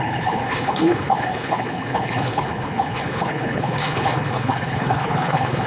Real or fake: fake